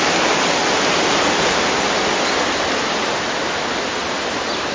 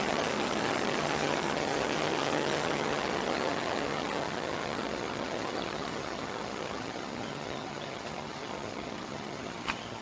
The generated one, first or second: second